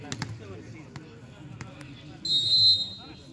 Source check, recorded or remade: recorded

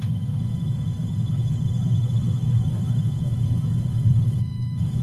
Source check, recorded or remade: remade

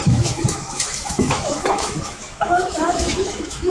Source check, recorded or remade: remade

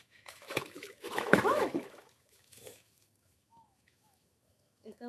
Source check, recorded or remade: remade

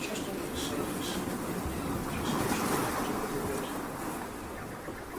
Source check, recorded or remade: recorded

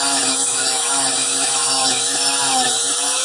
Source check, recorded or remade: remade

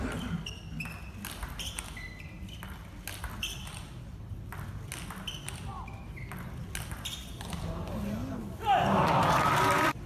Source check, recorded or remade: recorded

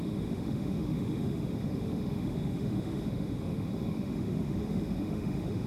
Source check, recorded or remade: remade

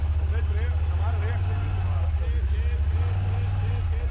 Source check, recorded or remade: recorded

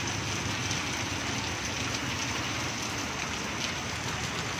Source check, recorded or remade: recorded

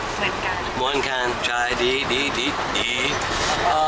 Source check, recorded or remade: recorded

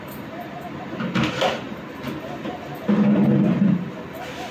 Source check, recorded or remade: recorded